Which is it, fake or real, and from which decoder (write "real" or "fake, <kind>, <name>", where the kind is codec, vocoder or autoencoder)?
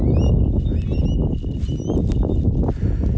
real